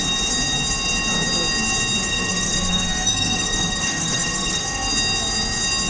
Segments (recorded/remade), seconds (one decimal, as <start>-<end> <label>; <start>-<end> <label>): 0.0-2.1 recorded; 2.1-4.9 remade; 4.9-5.9 recorded